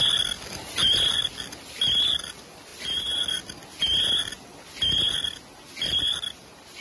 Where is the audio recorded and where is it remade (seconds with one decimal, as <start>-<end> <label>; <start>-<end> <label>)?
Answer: 0.0-6.8 recorded